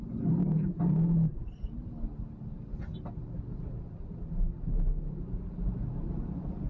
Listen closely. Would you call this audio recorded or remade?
recorded